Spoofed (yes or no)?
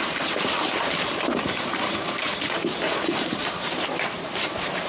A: yes